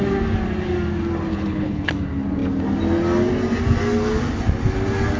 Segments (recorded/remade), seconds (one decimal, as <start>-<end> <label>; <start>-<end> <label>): 0.0-1.3 recorded; 1.3-1.9 remade; 1.9-5.2 recorded